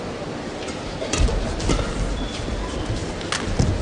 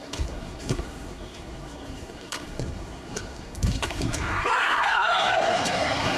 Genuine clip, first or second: first